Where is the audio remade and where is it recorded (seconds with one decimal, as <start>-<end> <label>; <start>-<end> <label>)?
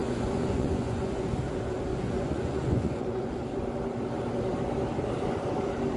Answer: 0.0-1.3 remade; 1.3-1.9 recorded; 1.9-3.3 remade; 3.3-6.0 recorded